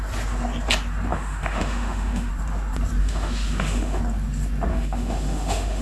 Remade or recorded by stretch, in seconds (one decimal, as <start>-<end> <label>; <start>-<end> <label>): 0.0-1.1 recorded; 1.1-2.3 remade; 2.3-3.0 recorded; 3.0-4.0 remade; 4.0-4.7 recorded; 4.7-5.8 remade